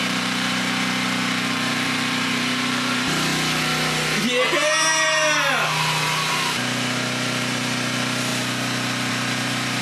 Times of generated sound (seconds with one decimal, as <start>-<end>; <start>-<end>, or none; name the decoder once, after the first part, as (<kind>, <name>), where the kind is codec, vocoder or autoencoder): 0.0-3.3 (vocoder, BigVGAN v2); 6.3-8.3; 9.1-9.8